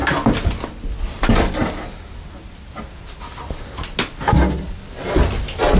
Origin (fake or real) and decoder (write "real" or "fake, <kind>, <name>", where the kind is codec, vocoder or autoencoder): real